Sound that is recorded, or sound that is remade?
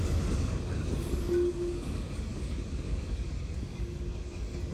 remade